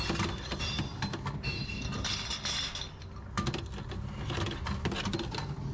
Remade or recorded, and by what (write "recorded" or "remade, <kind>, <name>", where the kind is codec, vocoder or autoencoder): recorded